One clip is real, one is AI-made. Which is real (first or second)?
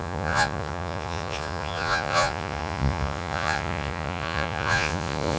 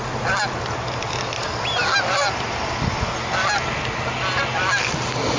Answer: second